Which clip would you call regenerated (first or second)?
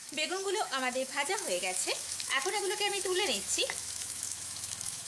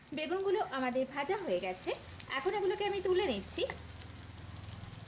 first